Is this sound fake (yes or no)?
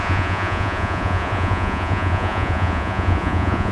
yes